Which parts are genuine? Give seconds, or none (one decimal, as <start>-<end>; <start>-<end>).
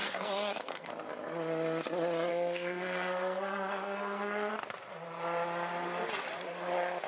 0.9-2.3; 4.5-7.1